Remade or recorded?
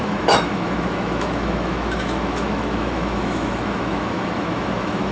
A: remade